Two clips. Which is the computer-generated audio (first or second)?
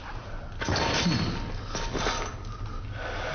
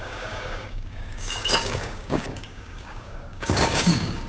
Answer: second